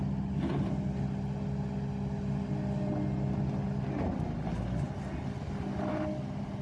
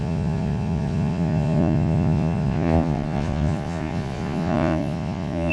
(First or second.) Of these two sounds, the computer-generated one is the second